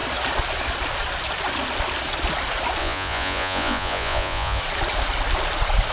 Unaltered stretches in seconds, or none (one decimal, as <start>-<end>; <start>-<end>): 0.0-2.8; 4.6-5.9